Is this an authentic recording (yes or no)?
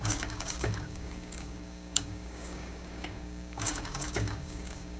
no